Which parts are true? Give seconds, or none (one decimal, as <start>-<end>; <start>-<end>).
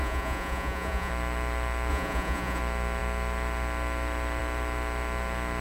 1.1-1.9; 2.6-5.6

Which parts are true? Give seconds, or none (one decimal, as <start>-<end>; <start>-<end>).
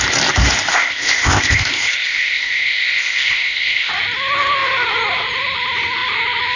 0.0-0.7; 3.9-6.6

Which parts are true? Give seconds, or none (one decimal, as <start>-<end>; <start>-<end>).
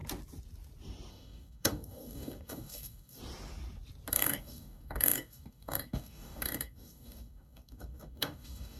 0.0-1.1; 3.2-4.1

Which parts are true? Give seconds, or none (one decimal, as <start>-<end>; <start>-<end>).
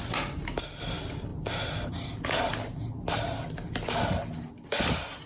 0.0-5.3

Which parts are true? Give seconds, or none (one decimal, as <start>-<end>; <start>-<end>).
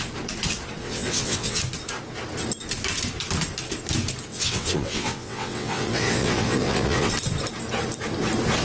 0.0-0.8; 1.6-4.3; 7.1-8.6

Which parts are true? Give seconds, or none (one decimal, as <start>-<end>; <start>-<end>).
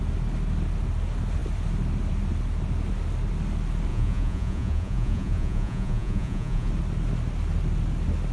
0.0-3.9; 6.7-8.3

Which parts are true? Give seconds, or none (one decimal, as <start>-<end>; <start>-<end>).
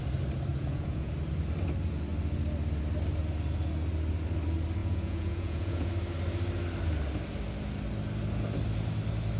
0.0-0.5; 1.1-4.8; 5.9-9.4